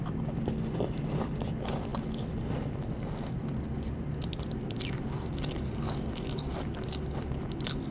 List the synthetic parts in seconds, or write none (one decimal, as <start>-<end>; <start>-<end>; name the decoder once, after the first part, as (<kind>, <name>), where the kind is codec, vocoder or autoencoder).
none